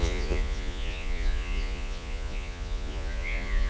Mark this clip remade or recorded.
remade